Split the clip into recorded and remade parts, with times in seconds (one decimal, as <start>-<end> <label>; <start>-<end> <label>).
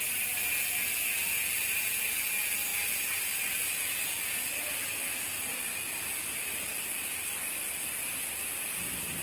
0.0-9.2 recorded